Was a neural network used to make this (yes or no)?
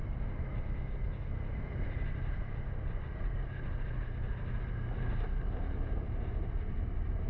no